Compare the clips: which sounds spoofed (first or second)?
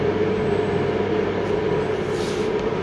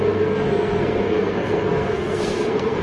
second